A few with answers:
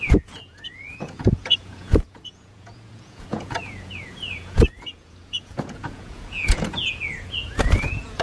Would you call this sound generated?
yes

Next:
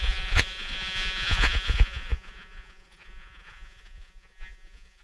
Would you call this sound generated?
yes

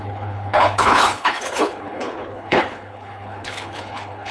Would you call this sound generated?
yes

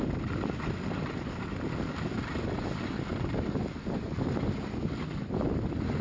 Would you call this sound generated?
no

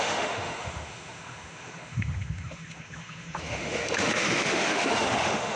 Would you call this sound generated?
yes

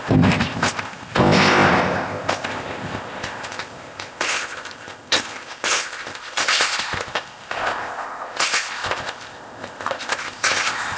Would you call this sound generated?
yes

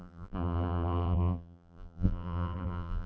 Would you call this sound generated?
yes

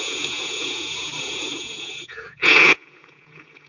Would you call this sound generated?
yes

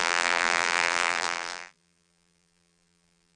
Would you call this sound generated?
yes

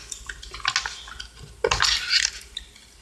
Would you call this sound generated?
no